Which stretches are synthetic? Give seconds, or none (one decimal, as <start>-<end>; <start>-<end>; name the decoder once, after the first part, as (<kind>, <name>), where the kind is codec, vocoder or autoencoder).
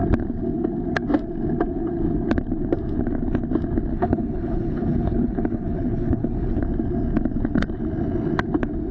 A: 3.9-6.6 (codec, HILCodec)